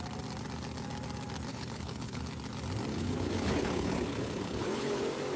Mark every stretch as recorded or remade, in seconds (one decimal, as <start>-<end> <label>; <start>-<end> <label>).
0.0-1.5 recorded; 1.5-2.2 remade; 2.2-2.9 recorded; 2.9-5.0 remade; 5.0-5.4 recorded